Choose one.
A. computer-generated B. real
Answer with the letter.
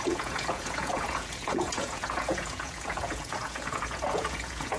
A